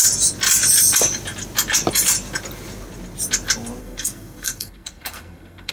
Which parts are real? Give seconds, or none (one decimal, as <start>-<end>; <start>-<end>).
0.0-3.8